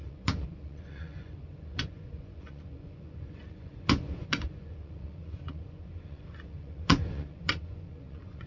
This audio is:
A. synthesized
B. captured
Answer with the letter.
A